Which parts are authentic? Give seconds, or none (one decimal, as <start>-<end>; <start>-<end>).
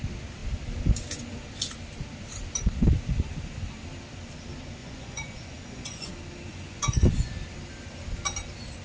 0.0-4.8; 6.1-6.5; 7.3-8.8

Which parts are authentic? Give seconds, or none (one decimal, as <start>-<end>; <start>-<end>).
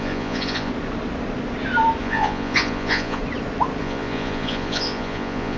0.7-2.0; 3.2-3.8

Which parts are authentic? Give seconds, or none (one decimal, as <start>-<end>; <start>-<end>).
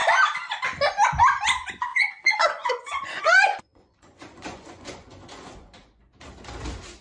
0.0-1.9; 6.0-7.0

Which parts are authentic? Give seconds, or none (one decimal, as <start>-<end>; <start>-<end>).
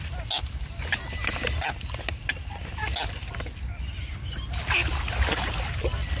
0.0-6.2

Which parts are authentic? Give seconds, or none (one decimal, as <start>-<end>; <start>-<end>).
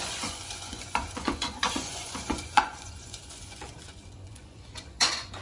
none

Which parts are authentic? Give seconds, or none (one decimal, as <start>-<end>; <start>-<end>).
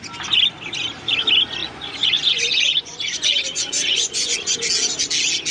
0.0-1.6; 4.7-5.5